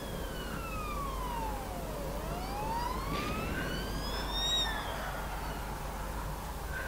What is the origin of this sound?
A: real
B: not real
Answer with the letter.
A